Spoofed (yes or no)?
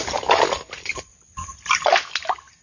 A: no